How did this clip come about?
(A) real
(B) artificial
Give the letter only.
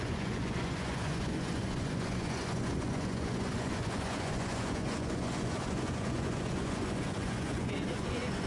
B